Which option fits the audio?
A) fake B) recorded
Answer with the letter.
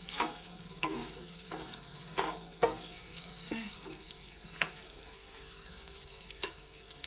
A